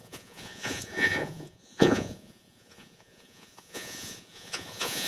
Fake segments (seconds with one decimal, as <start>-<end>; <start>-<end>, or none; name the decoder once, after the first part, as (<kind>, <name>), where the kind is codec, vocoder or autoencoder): 0.0-5.1 (vocoder, Vocos)